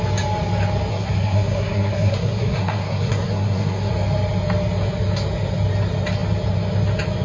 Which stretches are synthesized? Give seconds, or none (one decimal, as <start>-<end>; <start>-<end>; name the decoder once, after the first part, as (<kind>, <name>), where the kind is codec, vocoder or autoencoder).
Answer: 0.9-3.9 (codec, SNAC)

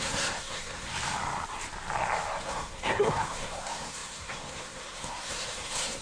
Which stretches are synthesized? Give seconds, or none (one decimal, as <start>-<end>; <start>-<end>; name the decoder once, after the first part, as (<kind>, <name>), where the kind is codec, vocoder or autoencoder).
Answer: 0.0-0.9 (codec, SNAC); 2.4-6.0

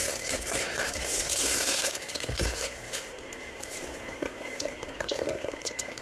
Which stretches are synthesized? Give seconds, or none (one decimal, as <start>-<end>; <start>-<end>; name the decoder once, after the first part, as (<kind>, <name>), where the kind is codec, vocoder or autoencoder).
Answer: 0.0-6.0 (codec, SNAC)

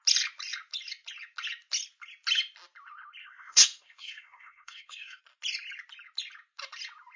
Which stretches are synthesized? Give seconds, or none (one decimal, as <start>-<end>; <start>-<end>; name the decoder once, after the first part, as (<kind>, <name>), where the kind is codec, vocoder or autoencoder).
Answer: 3.2-5.2 (codec, SNAC)